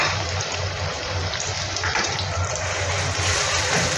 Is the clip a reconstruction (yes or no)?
yes